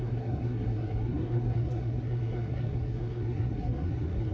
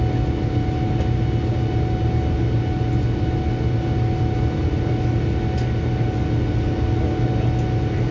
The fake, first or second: first